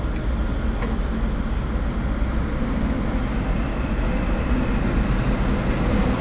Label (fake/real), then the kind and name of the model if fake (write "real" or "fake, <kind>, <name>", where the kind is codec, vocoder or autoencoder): real